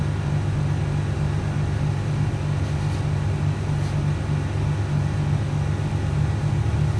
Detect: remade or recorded recorded